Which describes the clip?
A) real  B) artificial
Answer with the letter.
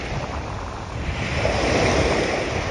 A